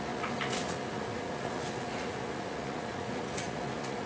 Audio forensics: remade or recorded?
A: remade